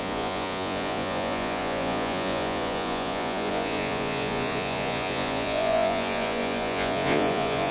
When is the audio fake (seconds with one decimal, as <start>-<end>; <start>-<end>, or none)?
0.0-7.7